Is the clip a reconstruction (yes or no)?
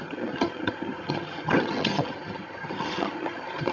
yes